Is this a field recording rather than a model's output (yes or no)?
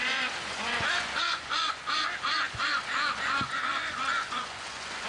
no